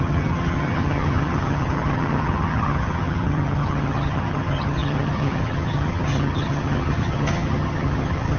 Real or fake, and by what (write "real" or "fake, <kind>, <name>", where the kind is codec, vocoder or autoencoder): fake, vocoder, HiFi-GAN